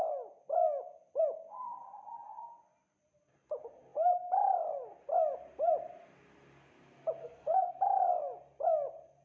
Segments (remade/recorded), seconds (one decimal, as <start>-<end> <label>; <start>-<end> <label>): 0.0-7.2 recorded; 7.2-7.7 remade; 7.7-9.2 recorded